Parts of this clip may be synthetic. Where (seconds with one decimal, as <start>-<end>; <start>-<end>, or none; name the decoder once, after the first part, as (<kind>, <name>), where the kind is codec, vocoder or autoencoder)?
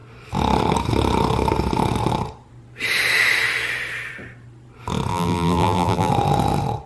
5.1-6.1 (vocoder, BigVGAN v2)